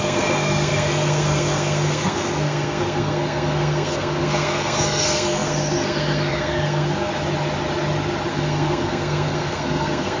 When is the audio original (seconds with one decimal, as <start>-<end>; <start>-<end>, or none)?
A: 7.1-8.3